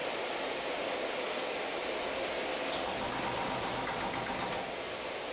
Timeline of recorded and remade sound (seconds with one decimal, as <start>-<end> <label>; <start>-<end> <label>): 0.0-5.3 recorded